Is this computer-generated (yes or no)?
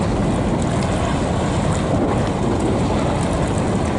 no